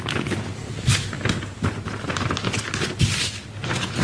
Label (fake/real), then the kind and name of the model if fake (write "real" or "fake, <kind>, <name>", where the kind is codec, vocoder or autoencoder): real